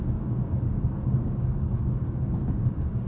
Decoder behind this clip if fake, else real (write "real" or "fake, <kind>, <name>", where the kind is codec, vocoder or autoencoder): fake, codec, DAC